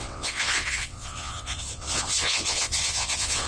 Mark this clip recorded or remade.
remade